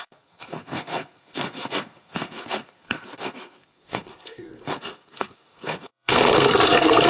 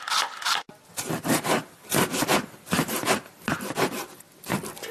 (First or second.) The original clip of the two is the second